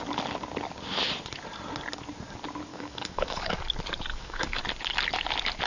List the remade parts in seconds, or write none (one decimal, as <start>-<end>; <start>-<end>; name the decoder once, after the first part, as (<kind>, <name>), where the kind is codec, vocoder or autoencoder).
2.7-3.6 (codec, DAC); 4.1-4.6